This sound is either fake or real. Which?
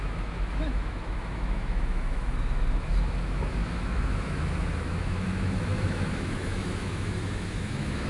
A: fake